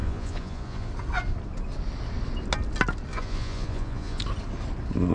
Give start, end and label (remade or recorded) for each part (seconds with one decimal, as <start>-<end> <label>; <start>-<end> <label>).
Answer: 0.0-0.9 remade; 0.9-3.1 recorded; 3.1-4.2 remade; 4.2-5.1 recorded